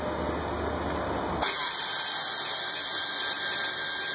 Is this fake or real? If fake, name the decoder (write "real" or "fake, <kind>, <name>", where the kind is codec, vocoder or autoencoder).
real